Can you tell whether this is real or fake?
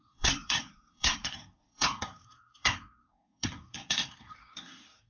fake